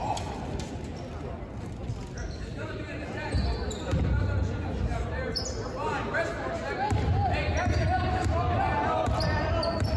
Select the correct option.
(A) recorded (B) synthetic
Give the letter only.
A